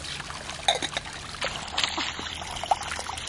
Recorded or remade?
recorded